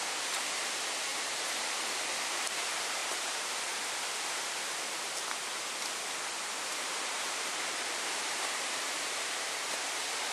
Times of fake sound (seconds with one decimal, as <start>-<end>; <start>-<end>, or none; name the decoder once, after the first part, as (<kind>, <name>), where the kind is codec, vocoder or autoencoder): 1.1-1.7 (vocoder, BigVGAN v2); 3.0-3.5; 6.4-10.3